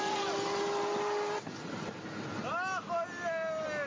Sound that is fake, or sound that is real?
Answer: real